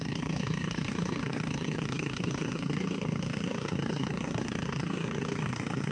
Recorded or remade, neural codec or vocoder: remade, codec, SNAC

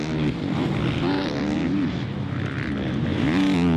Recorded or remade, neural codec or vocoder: recorded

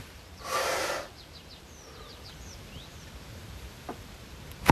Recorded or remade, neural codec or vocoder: remade, vocoder, BigVGAN v2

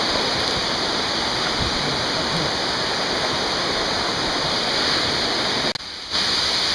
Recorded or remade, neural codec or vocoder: recorded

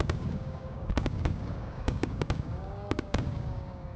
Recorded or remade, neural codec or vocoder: remade, codec, DAC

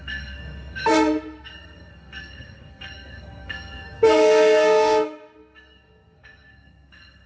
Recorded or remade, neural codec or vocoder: remade, codec, SNAC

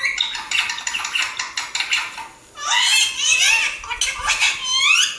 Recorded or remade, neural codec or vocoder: recorded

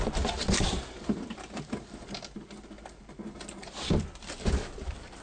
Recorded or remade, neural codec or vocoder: remade, vocoder, BigVGAN v2